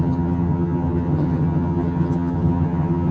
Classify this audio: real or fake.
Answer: fake